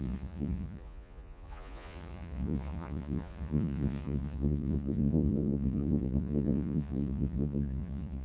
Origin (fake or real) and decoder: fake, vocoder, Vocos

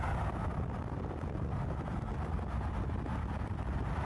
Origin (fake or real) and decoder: real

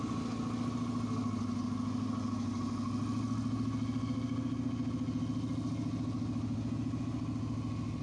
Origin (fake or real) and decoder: real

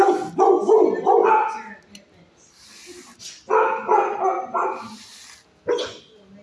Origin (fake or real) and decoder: real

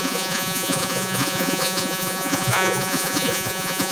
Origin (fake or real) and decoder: fake, vocoder, Vocos